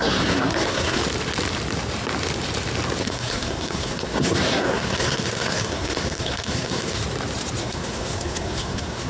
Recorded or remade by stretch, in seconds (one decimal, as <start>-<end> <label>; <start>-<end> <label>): 0.0-1.0 remade; 1.0-3.0 recorded; 3.0-7.0 remade; 7.0-7.6 recorded; 7.6-9.1 remade

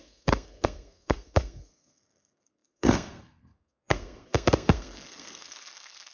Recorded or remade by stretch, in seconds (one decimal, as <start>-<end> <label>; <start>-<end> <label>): 0.0-6.1 remade

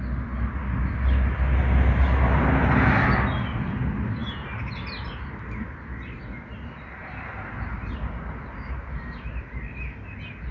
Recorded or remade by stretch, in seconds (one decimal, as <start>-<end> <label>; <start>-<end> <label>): 0.0-10.5 recorded

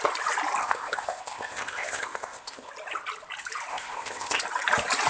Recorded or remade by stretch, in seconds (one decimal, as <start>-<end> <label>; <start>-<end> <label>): 0.0-0.6 recorded; 0.6-2.7 remade; 2.7-3.7 recorded; 3.7-4.4 remade; 4.4-5.1 recorded

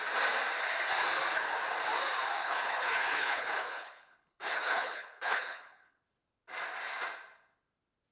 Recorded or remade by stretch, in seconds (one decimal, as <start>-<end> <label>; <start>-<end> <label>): 0.0-2.4 recorded; 2.4-6.0 remade; 6.0-8.1 recorded

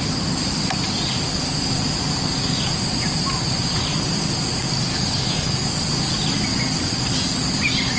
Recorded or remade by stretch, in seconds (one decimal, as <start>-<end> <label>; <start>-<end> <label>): 0.0-4.9 recorded; 4.9-5.7 remade; 5.7-8.0 recorded

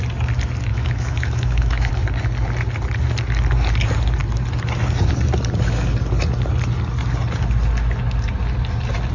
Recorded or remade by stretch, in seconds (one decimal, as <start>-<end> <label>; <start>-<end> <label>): 0.0-0.7 recorded; 0.7-1.9 remade; 1.9-9.1 recorded

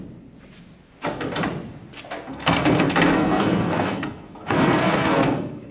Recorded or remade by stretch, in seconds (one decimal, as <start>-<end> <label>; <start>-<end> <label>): 0.0-2.3 recorded; 2.3-5.7 remade